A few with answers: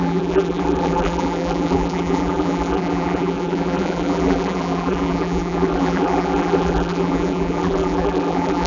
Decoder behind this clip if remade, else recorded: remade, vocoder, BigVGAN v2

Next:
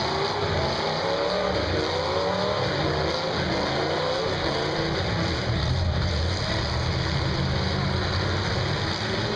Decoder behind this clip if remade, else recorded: recorded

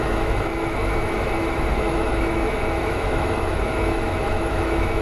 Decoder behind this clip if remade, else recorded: remade, autoencoder, DAC-VAE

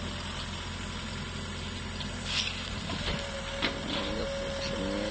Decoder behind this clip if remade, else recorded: recorded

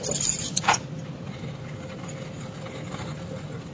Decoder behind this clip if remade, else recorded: recorded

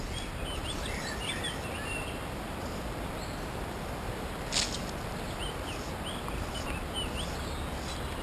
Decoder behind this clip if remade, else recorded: recorded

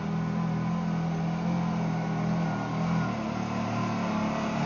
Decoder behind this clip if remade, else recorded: recorded